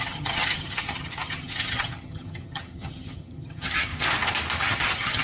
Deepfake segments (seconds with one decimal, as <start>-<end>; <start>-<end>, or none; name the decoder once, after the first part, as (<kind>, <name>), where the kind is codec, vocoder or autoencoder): 0.0-3.9 (vocoder, HiFi-GAN); 4.6-5.2

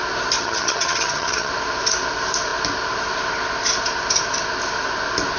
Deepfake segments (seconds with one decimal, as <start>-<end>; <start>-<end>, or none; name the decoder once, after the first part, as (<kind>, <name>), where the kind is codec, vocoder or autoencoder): 0.4-1.5 (vocoder, HiFi-GAN)

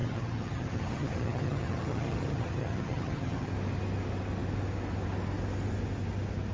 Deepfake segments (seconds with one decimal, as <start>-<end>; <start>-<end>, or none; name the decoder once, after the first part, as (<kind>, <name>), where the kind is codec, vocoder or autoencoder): 0.0-3.5 (vocoder, HiFi-GAN)

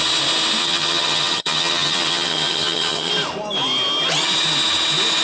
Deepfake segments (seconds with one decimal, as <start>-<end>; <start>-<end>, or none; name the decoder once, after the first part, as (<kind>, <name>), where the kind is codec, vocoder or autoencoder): 0.6-3.1 (vocoder, HiFi-GAN)